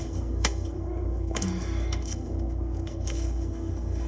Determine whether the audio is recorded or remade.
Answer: remade